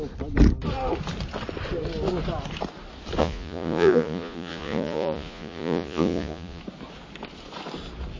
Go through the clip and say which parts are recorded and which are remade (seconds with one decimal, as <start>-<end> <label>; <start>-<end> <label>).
0.0-3.2 recorded; 3.2-6.6 remade; 6.6-8.2 recorded